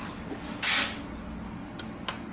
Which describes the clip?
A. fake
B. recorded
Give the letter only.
B